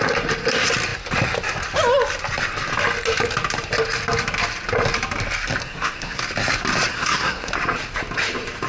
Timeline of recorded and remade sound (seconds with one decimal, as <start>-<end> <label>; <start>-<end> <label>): 0.0-5.6 recorded; 5.6-6.2 remade; 6.2-6.9 recorded; 6.9-7.5 remade; 7.5-8.7 recorded